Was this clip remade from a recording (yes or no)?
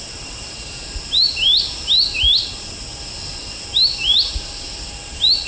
no